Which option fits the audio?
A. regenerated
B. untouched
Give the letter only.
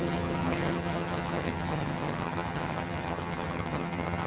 A